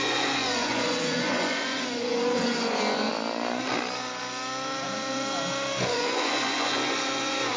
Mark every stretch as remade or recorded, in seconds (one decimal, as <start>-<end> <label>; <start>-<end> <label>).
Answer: 0.0-3.1 remade; 3.1-5.8 recorded; 5.8-7.6 remade